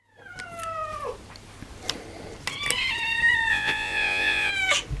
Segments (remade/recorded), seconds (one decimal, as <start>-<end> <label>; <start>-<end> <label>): 0.0-3.5 recorded; 3.5-4.5 remade; 4.5-5.0 recorded